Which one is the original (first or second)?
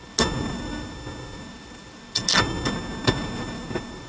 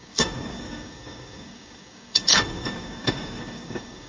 first